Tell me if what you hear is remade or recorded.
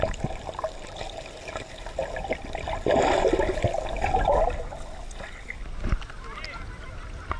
recorded